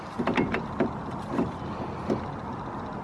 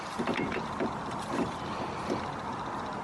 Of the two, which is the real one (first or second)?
first